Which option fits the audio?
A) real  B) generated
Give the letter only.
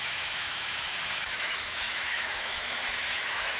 B